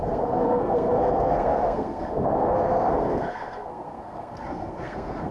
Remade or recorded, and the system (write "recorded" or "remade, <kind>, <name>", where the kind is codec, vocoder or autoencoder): remade, codec, SNAC